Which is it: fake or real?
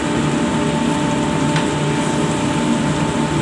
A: real